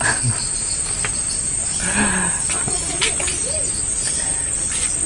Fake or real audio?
real